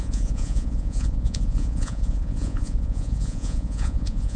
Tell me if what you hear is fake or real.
fake